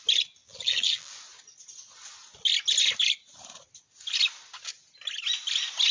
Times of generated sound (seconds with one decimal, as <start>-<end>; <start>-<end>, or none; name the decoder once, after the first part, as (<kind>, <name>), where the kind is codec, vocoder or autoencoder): 0.4-1.1 (vocoder, BigVGAN v2)